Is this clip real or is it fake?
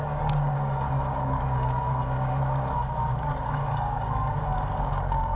fake